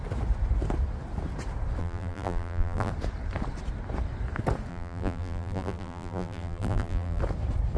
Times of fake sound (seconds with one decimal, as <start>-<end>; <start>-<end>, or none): 1.8-2.9; 4.7-7.2